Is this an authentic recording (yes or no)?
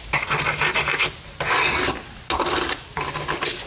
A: yes